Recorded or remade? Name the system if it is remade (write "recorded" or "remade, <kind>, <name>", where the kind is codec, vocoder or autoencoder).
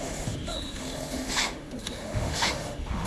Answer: remade, autoencoder, DAC-VAE